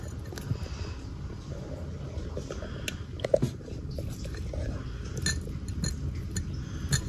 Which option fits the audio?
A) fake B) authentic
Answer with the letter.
B